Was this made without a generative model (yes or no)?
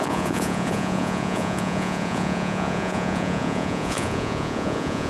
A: no